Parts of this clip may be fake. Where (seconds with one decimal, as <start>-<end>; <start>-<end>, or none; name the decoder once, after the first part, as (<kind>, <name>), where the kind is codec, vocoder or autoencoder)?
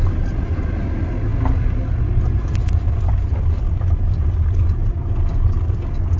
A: none